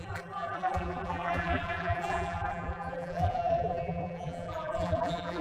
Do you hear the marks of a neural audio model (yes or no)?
yes